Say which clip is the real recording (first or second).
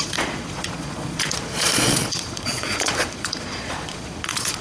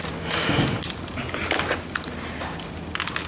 second